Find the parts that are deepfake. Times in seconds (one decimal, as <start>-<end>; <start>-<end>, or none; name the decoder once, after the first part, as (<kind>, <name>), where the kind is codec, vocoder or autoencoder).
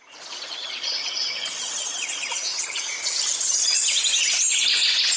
0.0-3.1 (vocoder, Vocos)